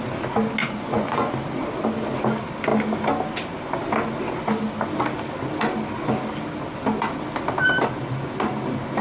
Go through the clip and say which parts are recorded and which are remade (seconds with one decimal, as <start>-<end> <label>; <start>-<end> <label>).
0.0-0.6 recorded; 0.6-1.3 remade; 1.3-9.0 recorded